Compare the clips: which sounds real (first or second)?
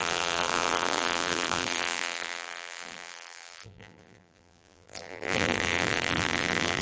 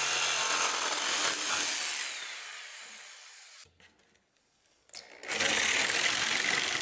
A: second